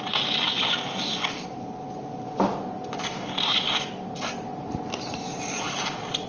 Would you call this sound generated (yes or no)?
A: no